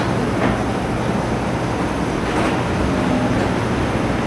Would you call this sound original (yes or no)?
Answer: yes